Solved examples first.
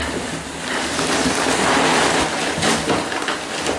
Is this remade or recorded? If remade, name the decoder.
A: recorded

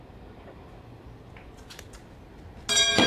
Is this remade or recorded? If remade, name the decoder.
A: recorded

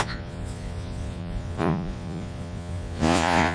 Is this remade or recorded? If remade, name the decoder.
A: remade, vocoder, Vocos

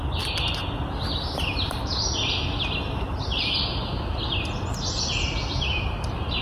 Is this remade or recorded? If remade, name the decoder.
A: recorded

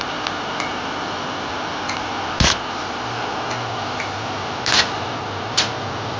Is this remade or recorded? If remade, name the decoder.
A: recorded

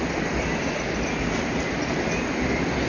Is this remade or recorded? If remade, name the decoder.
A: recorded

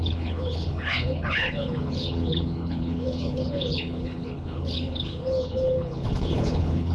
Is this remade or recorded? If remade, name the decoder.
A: remade, codec, HILCodec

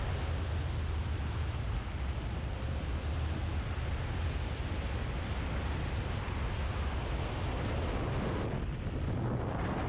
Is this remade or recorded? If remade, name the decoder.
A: recorded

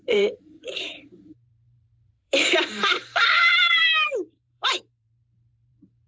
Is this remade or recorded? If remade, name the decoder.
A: remade, vocoder, BigVGAN v2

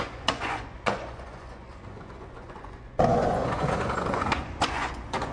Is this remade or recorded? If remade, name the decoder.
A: remade, vocoder, Vocos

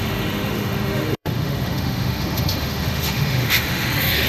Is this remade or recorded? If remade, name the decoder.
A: remade, autoencoder, DAC-VAE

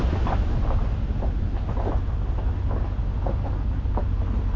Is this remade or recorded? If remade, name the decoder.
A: recorded